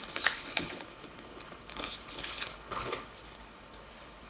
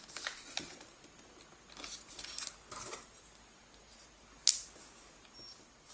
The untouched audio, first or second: second